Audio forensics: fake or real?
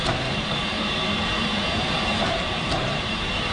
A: fake